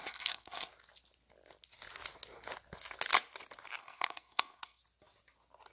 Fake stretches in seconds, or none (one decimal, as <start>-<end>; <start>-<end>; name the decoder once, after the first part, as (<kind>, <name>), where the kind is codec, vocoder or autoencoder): 0.0-0.7 (codec, SNAC); 3.8-4.8